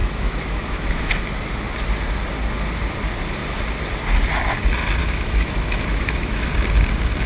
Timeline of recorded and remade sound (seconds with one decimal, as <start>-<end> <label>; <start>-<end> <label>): 0.0-1.1 remade; 1.1-5.0 recorded; 5.0-6.5 remade; 6.5-7.3 recorded